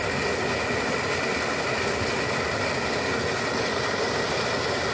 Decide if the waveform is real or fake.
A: real